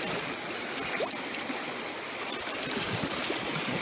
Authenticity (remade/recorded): recorded